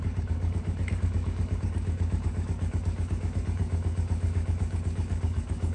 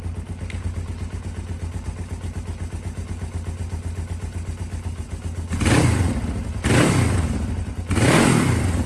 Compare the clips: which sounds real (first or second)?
second